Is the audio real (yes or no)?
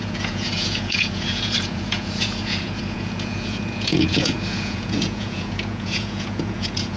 no